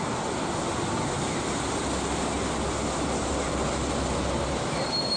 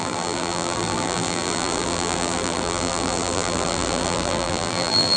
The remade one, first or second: second